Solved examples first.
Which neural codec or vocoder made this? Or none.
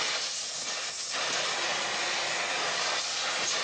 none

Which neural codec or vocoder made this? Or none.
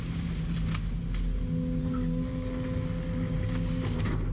none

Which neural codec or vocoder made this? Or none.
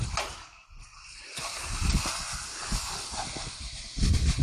none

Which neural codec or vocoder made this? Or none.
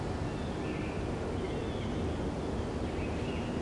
none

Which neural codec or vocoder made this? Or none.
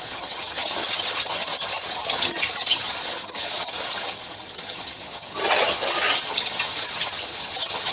vocoder, HiFi-GAN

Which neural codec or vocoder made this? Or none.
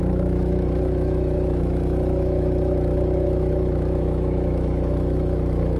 autoencoder, DAC-VAE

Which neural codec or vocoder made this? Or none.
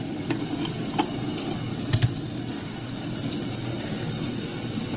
none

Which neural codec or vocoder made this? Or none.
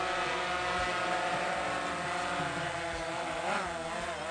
none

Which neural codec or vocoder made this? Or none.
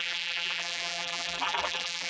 vocoder, BigVGAN v2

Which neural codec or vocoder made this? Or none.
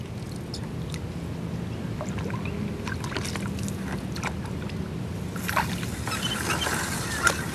none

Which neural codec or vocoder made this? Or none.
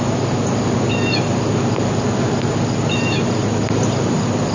none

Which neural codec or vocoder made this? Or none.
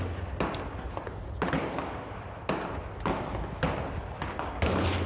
none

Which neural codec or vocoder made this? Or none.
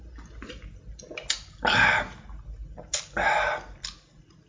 none